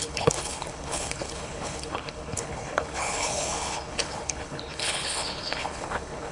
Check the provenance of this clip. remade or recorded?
remade